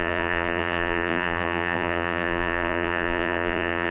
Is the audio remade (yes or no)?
yes